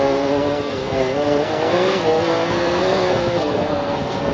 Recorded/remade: remade